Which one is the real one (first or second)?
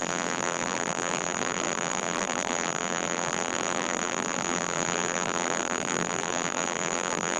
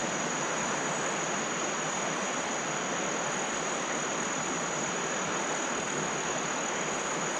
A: second